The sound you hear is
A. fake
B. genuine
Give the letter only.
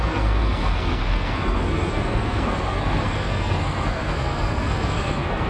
A